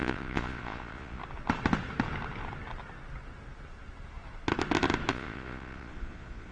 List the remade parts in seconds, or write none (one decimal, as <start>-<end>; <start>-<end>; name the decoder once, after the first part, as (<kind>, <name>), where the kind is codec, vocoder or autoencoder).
0.0-1.2 (vocoder, Vocos); 5.1-6.5